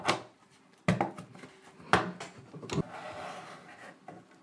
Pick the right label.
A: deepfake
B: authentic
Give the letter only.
B